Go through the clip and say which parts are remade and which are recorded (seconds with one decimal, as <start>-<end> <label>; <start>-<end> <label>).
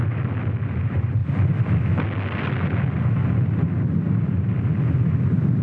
0.0-5.6 recorded